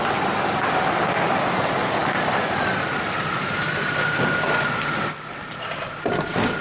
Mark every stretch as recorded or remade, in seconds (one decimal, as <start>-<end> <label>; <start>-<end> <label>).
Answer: 0.0-6.6 recorded

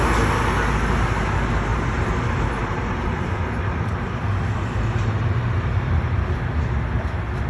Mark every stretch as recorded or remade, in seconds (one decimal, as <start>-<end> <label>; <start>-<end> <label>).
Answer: 0.0-1.7 recorded; 1.7-6.2 remade; 6.2-7.5 recorded

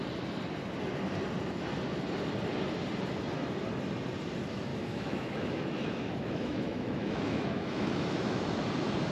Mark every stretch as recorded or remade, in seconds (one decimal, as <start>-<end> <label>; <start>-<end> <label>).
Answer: 0.0-4.7 recorded; 4.7-8.6 remade; 8.6-9.1 recorded

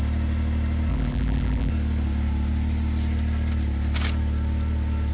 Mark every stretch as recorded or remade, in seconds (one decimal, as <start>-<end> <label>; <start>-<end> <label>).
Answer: 0.0-0.9 recorded; 0.9-1.7 remade; 1.7-5.1 recorded